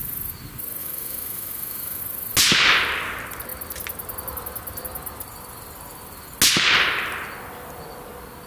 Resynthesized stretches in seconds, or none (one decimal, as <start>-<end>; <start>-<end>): 0.8-2.0